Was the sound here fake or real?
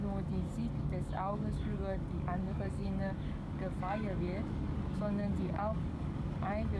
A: fake